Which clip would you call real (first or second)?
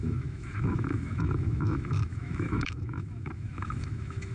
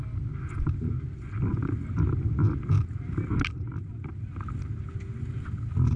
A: second